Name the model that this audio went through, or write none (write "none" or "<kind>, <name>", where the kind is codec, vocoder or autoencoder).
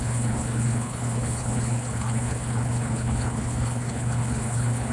codec, HILCodec